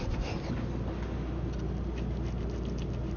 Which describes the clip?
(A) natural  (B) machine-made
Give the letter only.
A